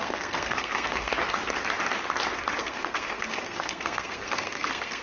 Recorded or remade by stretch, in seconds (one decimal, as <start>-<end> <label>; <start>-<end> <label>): 0.0-1.1 remade; 1.1-2.6 recorded; 2.6-5.0 remade